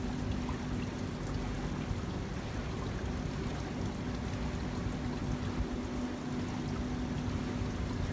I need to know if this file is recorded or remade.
recorded